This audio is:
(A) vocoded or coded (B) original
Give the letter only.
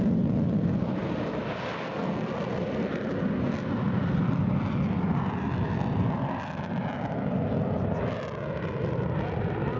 B